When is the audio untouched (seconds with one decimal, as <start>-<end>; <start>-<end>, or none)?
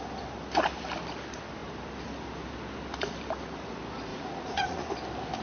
0.0-4.1; 4.9-5.4